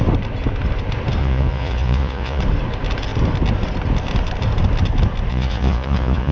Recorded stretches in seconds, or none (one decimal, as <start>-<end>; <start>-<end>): 0.0-1.2; 2.4-5.3